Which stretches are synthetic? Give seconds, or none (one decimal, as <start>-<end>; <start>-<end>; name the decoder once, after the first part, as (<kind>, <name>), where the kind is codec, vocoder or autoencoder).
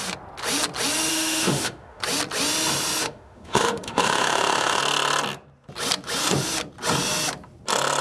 1.1-2.0 (autoencoder, DAC-VAE); 3.0-4.8